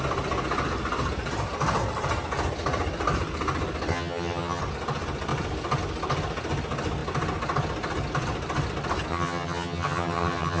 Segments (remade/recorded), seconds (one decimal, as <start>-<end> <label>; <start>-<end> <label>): 0.0-3.9 recorded; 3.9-4.6 remade; 4.6-9.1 recorded; 9.1-10.6 remade